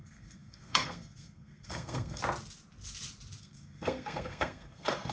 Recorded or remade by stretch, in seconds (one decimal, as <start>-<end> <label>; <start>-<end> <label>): 0.0-2.2 remade; 2.2-3.4 recorded; 3.4-5.1 remade